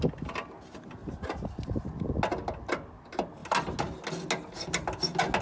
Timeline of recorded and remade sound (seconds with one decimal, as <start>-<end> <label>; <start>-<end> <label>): 0.0-5.4 recorded